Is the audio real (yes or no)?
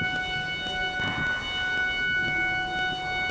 yes